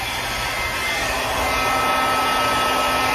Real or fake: real